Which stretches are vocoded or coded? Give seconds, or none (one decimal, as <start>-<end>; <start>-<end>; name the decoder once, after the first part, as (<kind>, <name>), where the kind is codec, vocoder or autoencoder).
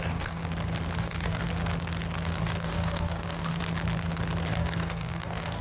0.0-0.4 (codec, DAC); 1.0-1.5; 2.4-3.6; 4.5-5.6